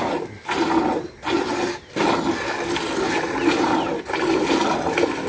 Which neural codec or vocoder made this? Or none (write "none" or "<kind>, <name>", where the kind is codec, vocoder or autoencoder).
none